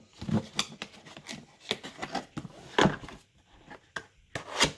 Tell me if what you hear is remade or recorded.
recorded